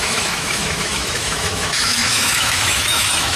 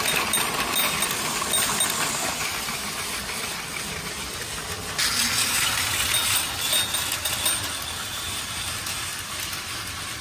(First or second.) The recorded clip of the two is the second